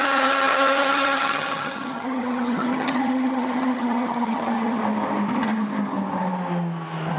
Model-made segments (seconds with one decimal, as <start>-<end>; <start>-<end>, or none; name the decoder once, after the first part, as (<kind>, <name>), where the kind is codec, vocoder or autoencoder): 0.0-4.8 (vocoder, HiFi-GAN)